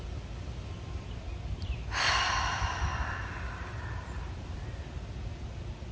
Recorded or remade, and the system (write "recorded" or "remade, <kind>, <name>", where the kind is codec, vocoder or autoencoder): recorded